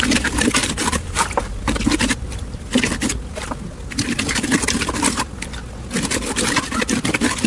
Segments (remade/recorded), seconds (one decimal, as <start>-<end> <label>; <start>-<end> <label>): 0.0-0.6 recorded; 0.6-1.6 remade; 1.6-7.5 recorded